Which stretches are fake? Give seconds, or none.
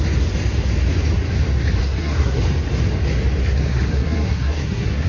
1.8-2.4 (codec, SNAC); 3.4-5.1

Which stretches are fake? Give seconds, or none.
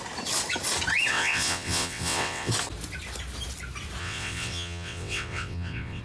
1.1-2.5 (vocoder, WaveNeXt); 4.0-6.0